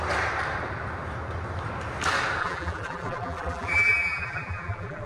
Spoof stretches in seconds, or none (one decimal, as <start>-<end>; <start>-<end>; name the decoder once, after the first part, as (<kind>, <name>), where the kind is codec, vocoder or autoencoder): 2.4-5.1 (vocoder, BigVGAN v2)